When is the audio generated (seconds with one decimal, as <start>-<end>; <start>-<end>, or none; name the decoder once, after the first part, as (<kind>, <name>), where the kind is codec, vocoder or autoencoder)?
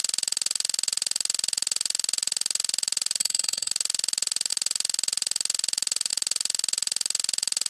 3.2-3.7 (codec, SNAC)